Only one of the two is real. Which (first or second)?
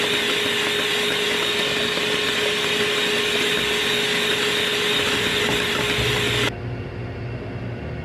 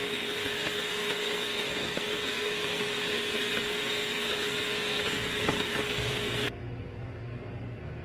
first